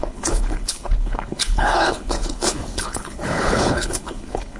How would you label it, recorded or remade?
remade